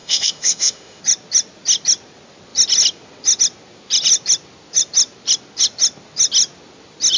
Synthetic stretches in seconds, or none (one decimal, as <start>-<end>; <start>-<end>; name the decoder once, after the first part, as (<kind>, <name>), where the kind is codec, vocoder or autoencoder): 0.0-1.0 (autoencoder, DAC-VAE)